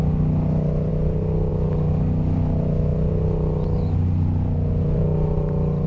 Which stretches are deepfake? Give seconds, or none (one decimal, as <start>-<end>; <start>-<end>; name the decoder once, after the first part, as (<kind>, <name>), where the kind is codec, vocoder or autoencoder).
none